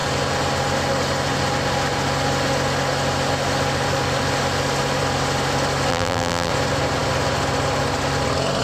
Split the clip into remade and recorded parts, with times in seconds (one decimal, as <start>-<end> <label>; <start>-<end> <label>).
0.0-5.9 recorded; 5.9-6.5 remade; 6.5-8.6 recorded